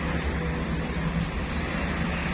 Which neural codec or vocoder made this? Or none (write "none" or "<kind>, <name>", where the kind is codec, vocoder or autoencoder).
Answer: none